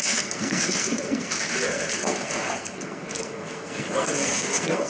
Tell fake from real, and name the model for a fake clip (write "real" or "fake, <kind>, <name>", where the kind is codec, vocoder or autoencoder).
fake, codec, SNAC